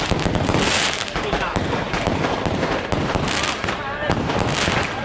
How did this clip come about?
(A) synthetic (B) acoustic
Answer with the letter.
A